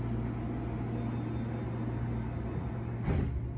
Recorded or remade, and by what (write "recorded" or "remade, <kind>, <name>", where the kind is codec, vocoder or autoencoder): recorded